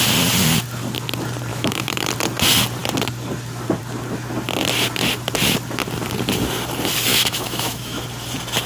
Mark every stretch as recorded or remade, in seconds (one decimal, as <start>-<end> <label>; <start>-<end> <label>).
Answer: 0.0-1.5 recorded; 1.5-2.1 remade; 2.1-7.1 recorded; 7.1-8.0 remade; 8.0-8.7 recorded